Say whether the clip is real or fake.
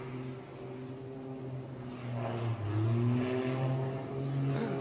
real